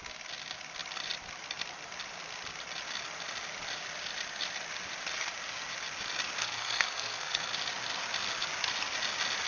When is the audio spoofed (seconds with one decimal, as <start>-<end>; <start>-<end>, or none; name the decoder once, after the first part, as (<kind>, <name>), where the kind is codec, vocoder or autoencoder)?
6.4-7.5 (codec, SNAC)